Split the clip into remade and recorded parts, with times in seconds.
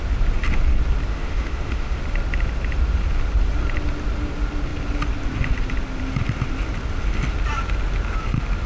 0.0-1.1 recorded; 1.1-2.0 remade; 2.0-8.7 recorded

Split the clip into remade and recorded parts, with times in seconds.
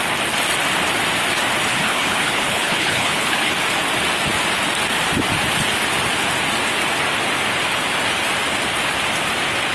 0.0-1.7 recorded; 1.7-3.5 remade; 3.5-9.7 recorded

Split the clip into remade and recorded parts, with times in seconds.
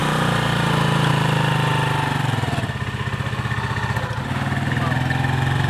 0.0-1.1 remade; 1.1-5.7 recorded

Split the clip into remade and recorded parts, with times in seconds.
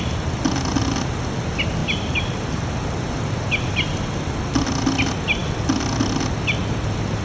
0.0-7.2 recorded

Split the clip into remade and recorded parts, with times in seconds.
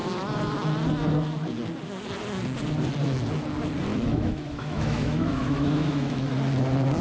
0.0-3.9 recorded; 3.9-6.3 remade; 6.3-7.0 recorded